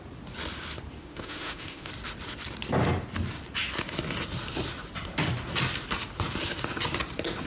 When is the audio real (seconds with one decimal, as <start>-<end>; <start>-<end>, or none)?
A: 0.0-1.0; 1.9-7.5